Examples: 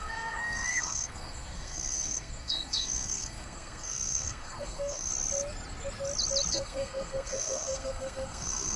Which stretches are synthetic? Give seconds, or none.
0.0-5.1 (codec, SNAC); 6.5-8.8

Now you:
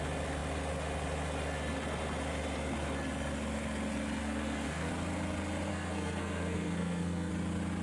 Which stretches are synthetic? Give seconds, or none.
4.2-4.9 (codec, SNAC); 5.7-7.3

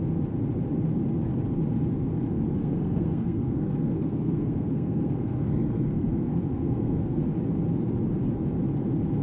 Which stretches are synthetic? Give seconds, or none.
2.6-7.3 (codec, SNAC)

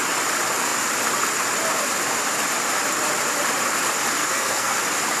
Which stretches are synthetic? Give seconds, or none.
4.2-4.8 (codec, SNAC)

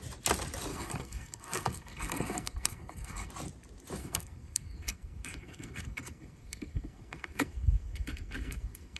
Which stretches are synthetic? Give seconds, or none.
0.7-3.3 (codec, SNAC); 4.0-9.0

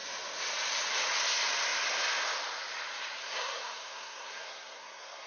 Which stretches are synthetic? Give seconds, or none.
3.2-5.3 (codec, SNAC)

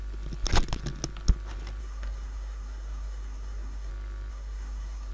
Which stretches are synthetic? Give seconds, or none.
1.8-3.9 (codec, SNAC); 4.3-5.1